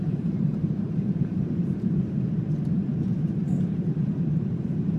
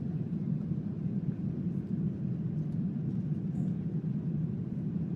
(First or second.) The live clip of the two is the second